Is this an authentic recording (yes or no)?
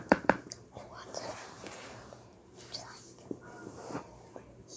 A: no